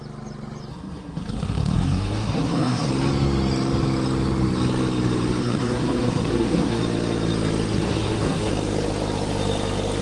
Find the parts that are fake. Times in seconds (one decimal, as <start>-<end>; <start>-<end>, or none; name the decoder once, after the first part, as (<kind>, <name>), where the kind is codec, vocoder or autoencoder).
0.7-2.9 (codec, SNAC); 5.4-6.8; 7.7-8.5